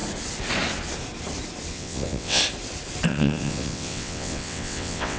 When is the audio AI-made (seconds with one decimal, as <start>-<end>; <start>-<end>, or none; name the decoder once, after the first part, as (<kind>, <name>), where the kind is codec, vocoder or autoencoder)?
1.7-2.4 (vocoder, WaveNeXt); 3.1-5.2